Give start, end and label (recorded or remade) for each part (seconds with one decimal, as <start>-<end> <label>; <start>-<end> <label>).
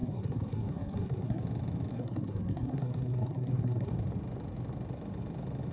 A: 0.0-1.4 remade; 1.4-1.9 recorded; 1.9-3.9 remade; 3.9-5.7 recorded